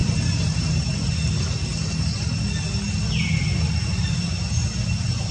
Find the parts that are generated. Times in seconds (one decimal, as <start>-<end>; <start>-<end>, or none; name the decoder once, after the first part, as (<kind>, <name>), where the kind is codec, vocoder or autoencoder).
0.0-0.9 (vocoder, BigVGAN v2)